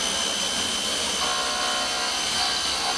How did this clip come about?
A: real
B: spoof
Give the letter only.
A